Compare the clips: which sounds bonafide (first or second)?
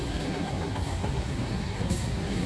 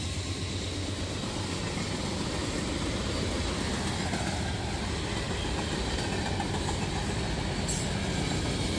second